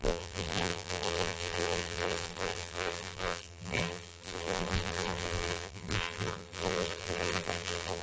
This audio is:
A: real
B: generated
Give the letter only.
B